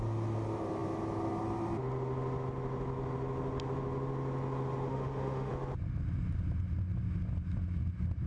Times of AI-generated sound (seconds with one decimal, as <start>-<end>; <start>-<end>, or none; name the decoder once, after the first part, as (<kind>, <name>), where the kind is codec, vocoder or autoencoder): 4.9-5.5 (autoencoder, DAC-VAE)